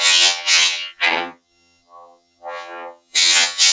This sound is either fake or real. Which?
fake